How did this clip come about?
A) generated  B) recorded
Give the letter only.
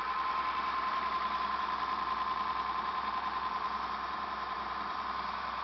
A